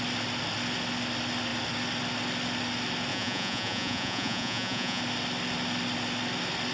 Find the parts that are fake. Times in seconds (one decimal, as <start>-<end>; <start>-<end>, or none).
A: 3.1-5.0